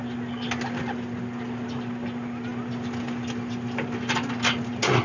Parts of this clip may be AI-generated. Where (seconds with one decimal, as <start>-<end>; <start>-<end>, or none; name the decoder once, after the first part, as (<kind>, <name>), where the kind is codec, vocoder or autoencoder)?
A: none